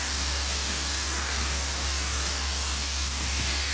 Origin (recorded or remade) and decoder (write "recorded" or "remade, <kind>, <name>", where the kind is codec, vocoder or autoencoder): remade, codec, DAC